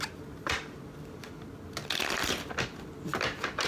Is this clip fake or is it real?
real